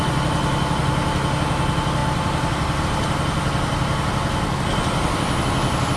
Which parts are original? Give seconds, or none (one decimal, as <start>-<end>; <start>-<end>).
0.0-2.0; 2.8-6.0

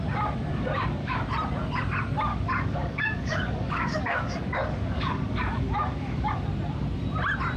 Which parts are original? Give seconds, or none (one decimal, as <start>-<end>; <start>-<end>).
0.0-0.5; 1.2-2.3; 6.3-7.6

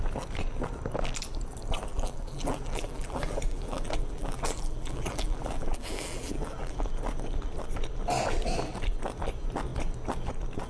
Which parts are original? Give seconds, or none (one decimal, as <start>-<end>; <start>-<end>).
0.0-1.9; 6.9-10.7

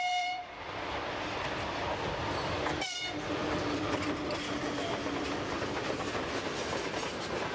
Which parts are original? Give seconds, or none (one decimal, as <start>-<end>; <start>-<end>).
0.4-1.7

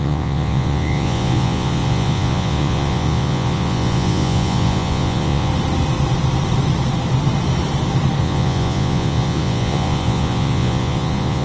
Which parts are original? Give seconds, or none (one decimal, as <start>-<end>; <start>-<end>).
5.5-8.2

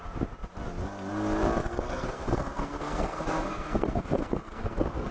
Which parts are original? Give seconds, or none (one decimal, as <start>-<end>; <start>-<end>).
0.0-1.6

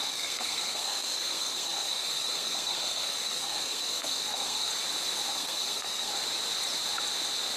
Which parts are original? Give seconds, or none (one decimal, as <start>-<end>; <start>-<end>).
4.7-5.3; 6.1-7.6

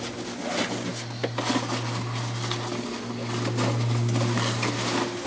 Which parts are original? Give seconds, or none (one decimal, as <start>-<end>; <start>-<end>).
0.0-5.3